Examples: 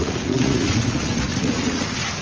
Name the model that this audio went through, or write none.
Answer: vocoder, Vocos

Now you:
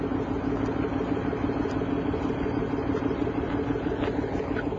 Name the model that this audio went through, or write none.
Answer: none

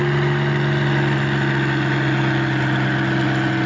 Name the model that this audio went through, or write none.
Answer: none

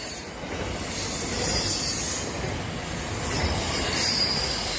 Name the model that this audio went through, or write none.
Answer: none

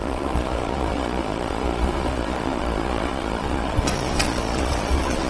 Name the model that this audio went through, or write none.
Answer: vocoder, Vocos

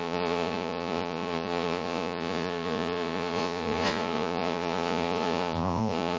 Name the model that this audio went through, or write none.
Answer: vocoder, Vocos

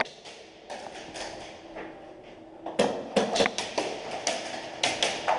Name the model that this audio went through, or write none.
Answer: none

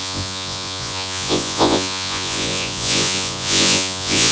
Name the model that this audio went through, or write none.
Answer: vocoder, Vocos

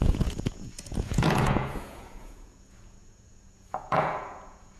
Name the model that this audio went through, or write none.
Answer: vocoder, Vocos